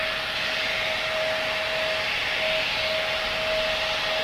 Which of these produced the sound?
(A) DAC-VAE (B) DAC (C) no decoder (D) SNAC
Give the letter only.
C